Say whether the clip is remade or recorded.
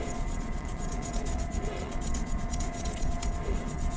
remade